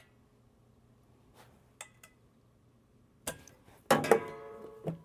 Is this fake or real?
real